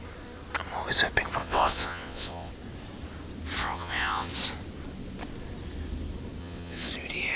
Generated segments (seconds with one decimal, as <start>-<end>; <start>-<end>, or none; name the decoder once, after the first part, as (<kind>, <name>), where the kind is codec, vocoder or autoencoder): 1.4-2.5 (vocoder, WaveNeXt); 3.6-4.3; 6.4-6.9